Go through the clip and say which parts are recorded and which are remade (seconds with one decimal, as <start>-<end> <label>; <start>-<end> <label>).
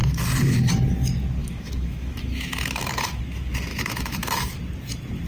0.0-1.4 recorded; 1.4-3.2 remade; 3.2-3.7 recorded; 3.7-4.6 remade; 4.6-5.3 recorded